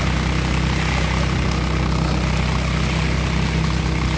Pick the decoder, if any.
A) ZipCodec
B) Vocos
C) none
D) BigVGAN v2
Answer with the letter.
C